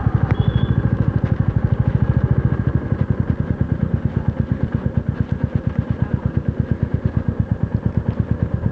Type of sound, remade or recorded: recorded